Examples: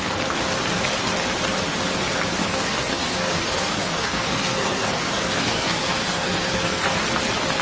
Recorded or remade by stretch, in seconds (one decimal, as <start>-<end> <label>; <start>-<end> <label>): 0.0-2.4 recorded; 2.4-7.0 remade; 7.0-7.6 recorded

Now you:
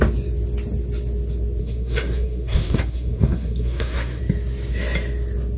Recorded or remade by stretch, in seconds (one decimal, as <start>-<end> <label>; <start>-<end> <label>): 0.0-1.6 recorded; 1.6-4.2 remade; 4.2-5.6 recorded

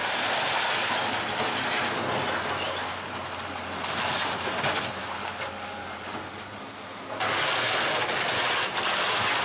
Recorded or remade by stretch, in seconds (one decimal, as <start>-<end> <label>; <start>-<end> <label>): 0.0-9.4 recorded

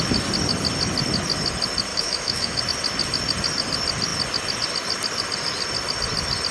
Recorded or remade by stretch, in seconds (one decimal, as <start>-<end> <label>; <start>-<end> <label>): 0.0-1.9 recorded; 1.9-2.6 remade; 2.6-6.5 recorded

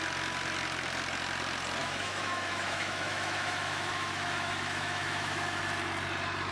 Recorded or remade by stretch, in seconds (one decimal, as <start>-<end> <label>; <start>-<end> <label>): 0.0-1.8 recorded; 1.8-5.6 remade; 5.6-6.5 recorded

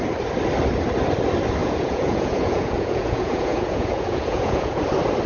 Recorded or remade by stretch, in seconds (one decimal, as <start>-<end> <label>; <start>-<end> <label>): 0.0-1.6 recorded; 1.6-4.8 remade; 4.8-5.3 recorded

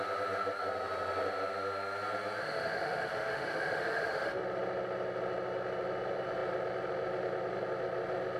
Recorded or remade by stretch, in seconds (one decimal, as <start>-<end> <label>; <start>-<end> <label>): 0.0-2.4 recorded; 2.4-4.4 remade; 4.4-8.4 recorded